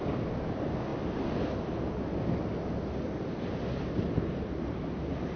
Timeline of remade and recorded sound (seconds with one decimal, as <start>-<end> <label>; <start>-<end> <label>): 0.0-5.4 recorded